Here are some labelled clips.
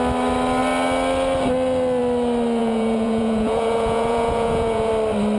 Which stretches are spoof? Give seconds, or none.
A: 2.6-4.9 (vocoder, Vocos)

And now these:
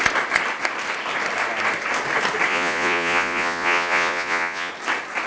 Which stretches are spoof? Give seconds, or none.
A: 2.5-4.7 (vocoder, Vocos)

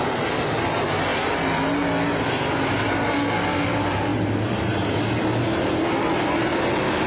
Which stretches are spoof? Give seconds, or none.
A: none

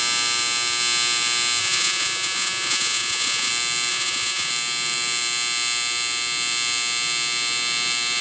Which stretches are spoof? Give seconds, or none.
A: 1.6-3.5 (vocoder, Vocos); 3.9-4.5

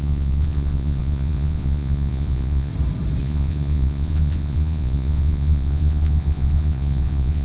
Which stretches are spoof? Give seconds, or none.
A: 0.0-2.7 (vocoder, Vocos); 3.2-7.4

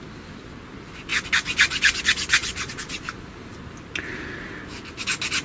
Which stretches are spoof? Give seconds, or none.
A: 2.4-3.0 (vocoder, Vocos)

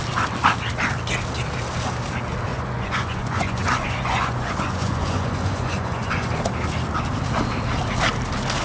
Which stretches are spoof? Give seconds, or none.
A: 2.5-6.3 (vocoder, Vocos)